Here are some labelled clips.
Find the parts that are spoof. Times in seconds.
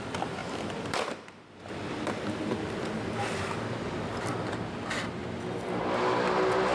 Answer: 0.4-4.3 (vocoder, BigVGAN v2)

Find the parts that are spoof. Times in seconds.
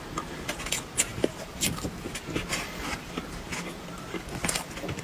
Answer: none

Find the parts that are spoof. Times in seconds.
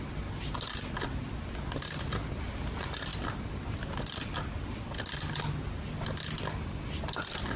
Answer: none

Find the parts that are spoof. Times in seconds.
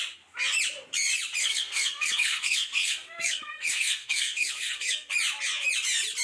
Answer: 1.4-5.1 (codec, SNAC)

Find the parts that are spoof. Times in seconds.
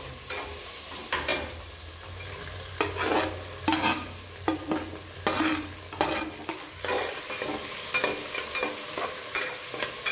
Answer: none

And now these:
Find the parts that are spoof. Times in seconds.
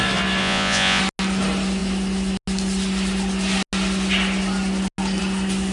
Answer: 0.4-1.0 (vocoder, Vocos)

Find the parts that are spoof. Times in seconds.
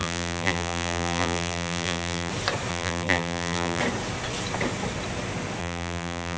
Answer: 0.0-2.3 (vocoder, BigVGAN v2); 2.7-3.8; 5.6-6.4